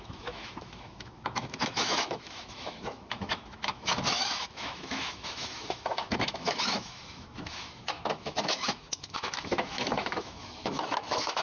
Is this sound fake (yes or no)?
yes